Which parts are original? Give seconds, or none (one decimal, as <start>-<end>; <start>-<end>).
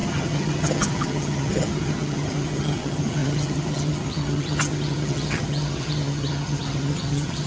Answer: none